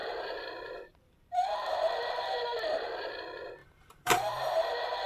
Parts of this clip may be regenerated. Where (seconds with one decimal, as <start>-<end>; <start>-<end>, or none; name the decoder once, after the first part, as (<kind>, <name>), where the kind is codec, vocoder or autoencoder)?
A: 0.0-3.1 (vocoder, BigVGAN v2); 3.6-5.1

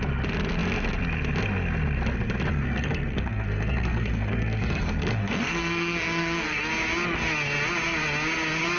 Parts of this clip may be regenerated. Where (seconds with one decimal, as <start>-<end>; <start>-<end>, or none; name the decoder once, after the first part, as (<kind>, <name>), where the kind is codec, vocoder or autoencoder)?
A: 2.5-6.7 (codec, SNAC)

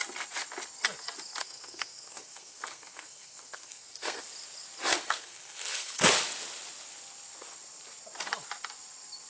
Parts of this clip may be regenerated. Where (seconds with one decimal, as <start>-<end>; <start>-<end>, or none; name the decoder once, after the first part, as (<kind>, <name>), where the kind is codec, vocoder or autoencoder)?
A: 1.4-4.2 (codec, SNAC); 4.9-5.9

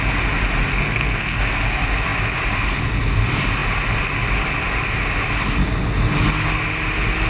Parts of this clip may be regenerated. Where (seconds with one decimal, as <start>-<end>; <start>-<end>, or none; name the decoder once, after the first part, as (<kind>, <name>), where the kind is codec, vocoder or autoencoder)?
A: 0.7-1.4 (codec, SNAC)

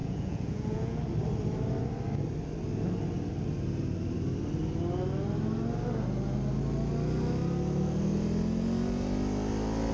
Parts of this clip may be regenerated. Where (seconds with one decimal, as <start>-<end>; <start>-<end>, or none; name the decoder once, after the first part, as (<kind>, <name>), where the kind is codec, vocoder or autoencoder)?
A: 0.0-1.0 (vocoder, Vocos)